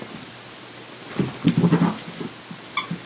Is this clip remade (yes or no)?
no